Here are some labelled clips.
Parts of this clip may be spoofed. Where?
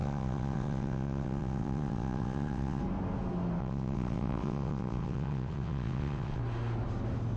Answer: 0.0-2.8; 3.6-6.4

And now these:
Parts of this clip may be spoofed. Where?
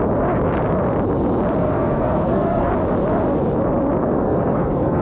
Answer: 1.6-2.7; 4.0-5.0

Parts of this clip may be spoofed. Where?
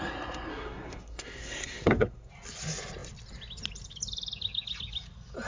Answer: 0.5-2.3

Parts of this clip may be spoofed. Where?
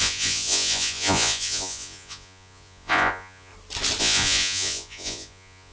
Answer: 0.0-3.5; 4.0-5.7